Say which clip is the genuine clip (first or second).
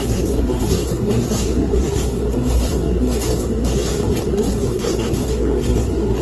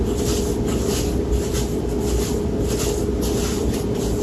second